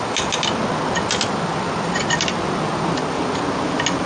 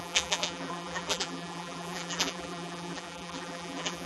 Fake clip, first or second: second